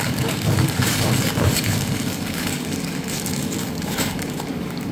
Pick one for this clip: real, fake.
fake